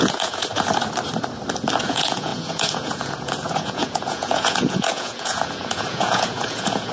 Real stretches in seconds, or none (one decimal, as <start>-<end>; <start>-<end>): 0.5-1.8